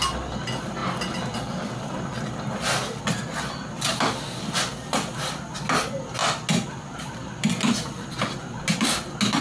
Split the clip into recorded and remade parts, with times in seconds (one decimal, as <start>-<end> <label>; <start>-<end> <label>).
0.0-9.4 recorded